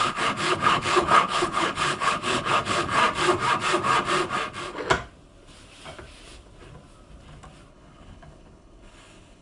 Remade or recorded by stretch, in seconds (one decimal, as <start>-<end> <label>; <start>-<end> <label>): 0.0-3.0 remade; 3.0-7.7 recorded; 7.7-9.4 remade